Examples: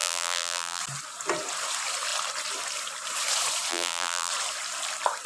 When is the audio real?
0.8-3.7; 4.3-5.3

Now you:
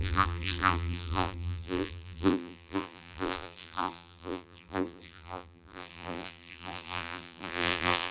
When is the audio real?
none

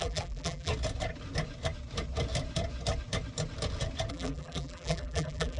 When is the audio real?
0.7-4.1

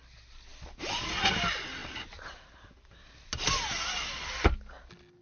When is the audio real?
0.0-1.8; 2.7-5.2

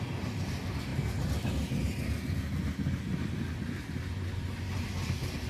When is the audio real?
0.0-5.5

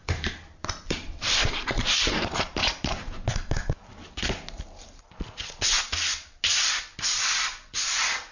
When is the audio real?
3.0-8.3